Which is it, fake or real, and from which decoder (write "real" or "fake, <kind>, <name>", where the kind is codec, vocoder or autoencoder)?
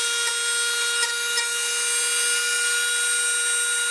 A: real